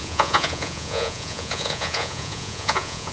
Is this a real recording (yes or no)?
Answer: no